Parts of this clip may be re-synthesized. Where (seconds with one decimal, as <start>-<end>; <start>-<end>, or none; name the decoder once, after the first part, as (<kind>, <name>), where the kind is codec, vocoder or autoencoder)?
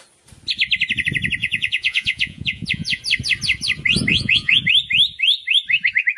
1.4-3.0 (vocoder, Vocos); 4.1-4.6